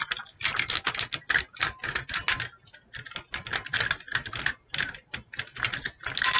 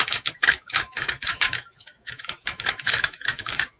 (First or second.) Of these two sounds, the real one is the first